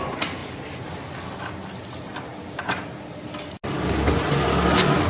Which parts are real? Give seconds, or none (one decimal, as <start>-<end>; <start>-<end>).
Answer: 0.0-5.1

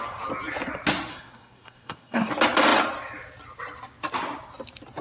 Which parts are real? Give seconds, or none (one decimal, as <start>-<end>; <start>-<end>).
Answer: 0.0-1.1; 2.3-5.0

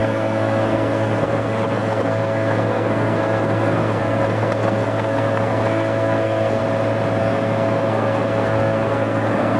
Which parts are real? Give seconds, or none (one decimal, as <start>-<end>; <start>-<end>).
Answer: 6.6-7.2